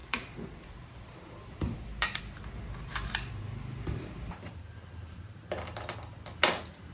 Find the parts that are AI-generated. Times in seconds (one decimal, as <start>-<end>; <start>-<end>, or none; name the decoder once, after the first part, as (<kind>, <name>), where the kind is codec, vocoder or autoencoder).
0.0-2.2 (vocoder, BigVGAN v2)

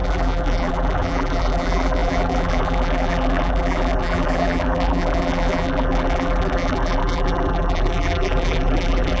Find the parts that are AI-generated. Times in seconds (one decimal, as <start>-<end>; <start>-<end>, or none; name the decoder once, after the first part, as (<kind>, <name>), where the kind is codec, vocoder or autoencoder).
0.0-9.2 (vocoder, BigVGAN v2)

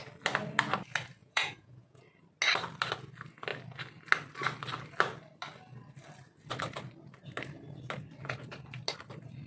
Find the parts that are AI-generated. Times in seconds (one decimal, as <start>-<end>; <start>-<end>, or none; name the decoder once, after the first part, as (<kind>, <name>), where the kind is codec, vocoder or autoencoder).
1.2-2.0 (vocoder, Vocos)

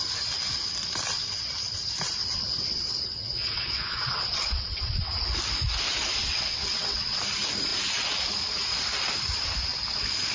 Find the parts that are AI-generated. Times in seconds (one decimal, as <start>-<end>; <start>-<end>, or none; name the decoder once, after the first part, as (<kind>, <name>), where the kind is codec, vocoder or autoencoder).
2.2-5.2 (vocoder, WaveNeXt); 6.2-7.2

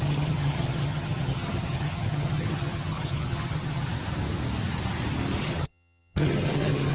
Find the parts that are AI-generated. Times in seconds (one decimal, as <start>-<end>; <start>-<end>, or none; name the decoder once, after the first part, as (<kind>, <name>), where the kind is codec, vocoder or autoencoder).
0.0-3.9 (vocoder, HiFi-GAN); 5.4-6.9